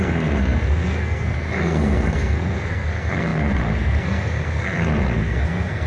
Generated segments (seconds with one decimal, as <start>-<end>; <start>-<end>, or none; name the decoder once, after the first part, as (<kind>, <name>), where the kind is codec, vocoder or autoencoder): 0.0-5.9 (codec, SNAC)